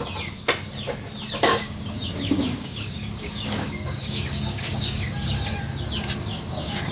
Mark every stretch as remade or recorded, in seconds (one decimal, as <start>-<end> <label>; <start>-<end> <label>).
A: 0.0-1.5 recorded; 1.5-5.6 remade; 5.6-6.3 recorded; 6.3-6.9 remade